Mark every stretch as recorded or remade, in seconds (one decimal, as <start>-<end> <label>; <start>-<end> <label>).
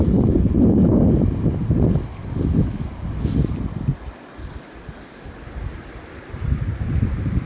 0.0-7.5 recorded